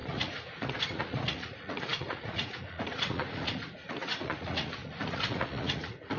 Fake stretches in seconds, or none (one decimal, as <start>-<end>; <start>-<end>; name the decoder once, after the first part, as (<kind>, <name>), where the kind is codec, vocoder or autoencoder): 0.0-6.2 (vocoder, Vocos)